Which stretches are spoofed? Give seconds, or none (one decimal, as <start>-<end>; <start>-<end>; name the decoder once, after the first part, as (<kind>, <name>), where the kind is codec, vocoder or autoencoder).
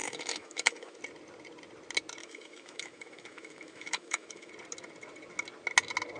0.0-1.0 (autoencoder, DAC-VAE); 2.2-4.5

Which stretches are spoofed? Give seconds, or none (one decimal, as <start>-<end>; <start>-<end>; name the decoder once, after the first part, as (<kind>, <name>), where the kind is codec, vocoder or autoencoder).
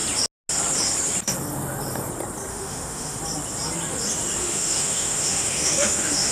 2.5-3.2 (autoencoder, DAC-VAE); 4.4-6.3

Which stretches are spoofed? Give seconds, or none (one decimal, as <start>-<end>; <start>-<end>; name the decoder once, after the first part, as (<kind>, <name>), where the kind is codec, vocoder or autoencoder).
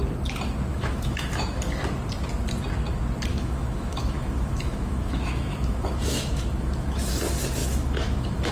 0.7-1.6 (autoencoder, DAC-VAE); 3.3-7.1; 7.6-8.5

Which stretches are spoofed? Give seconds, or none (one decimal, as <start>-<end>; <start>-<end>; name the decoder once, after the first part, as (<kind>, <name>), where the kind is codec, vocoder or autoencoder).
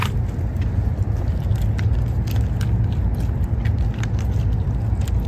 none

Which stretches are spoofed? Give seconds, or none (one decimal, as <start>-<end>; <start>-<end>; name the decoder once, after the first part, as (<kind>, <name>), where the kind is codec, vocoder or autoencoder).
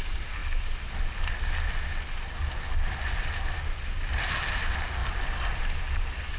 none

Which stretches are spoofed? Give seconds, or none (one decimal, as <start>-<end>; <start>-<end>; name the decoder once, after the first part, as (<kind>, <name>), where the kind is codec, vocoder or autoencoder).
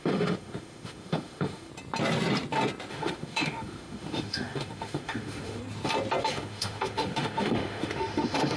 0.0-1.7 (autoencoder, DAC-VAE); 2.9-5.6; 6.2-8.6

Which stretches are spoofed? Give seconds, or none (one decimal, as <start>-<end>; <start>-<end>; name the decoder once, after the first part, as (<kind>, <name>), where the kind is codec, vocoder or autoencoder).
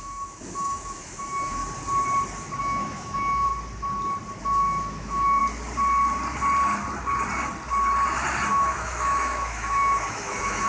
0.0-1.6 (autoencoder, DAC-VAE); 2.6-3.5; 4.4-5.4; 8.5-10.7